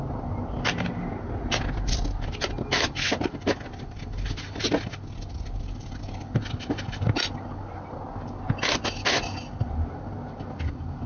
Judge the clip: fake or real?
real